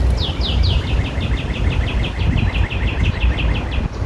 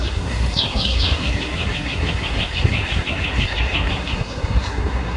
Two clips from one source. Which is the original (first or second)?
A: first